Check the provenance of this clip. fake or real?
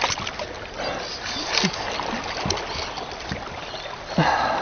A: real